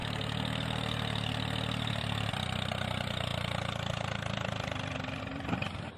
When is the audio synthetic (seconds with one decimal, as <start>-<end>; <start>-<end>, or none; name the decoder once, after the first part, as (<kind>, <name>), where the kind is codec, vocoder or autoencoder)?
1.9-3.3 (vocoder, BigVGAN v2); 3.9-6.0